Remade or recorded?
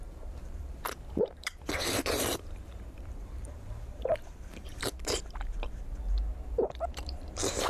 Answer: remade